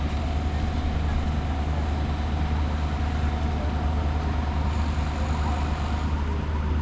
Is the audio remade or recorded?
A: recorded